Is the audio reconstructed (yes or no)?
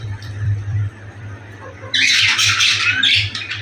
yes